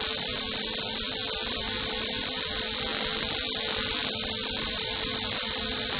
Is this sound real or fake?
real